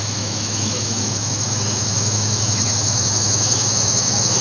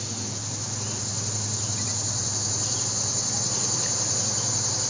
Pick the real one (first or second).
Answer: second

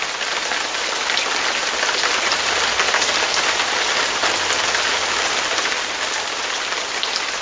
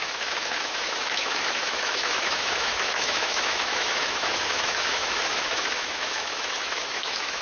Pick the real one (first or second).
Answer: first